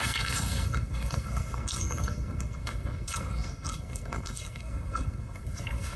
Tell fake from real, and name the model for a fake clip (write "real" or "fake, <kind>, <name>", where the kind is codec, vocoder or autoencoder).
fake, codec, SNAC